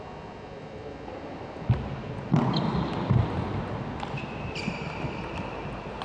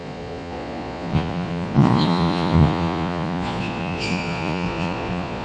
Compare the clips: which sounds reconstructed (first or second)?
second